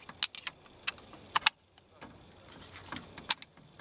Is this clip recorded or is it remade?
recorded